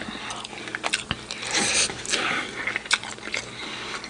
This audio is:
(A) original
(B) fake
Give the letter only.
A